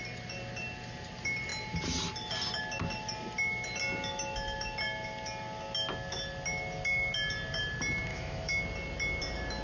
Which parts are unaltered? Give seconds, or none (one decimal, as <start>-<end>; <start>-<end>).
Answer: 0.0-8.1; 8.6-9.6